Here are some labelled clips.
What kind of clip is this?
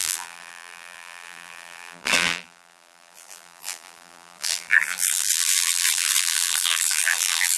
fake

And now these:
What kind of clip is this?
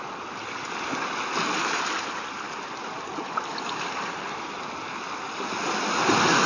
real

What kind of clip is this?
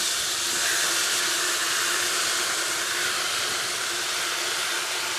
real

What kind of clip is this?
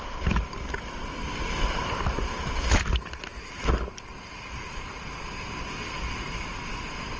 real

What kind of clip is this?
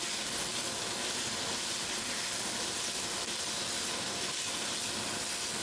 real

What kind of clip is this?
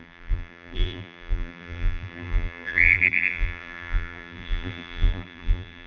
fake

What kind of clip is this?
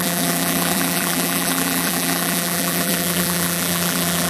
fake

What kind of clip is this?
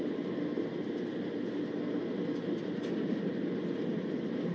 real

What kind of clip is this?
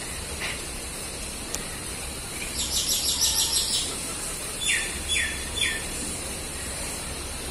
fake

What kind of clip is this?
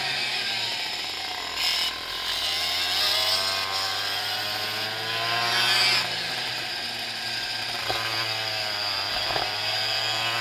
real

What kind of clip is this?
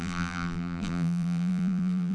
fake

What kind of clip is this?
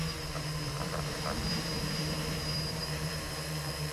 fake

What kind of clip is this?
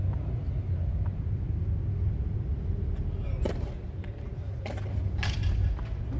real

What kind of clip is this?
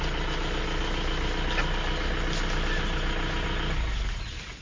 real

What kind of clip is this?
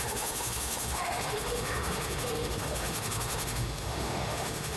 fake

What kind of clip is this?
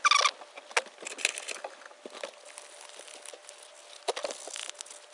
real